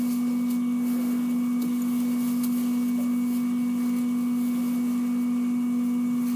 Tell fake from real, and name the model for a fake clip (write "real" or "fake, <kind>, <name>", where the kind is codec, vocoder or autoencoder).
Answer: real